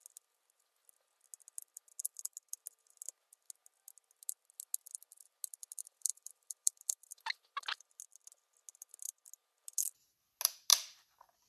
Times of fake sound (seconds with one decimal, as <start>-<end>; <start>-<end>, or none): 5.8-8.0; 10.7-11.5